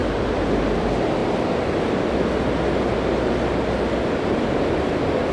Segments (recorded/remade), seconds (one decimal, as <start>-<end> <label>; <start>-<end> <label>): 0.0-0.6 remade; 0.6-5.3 recorded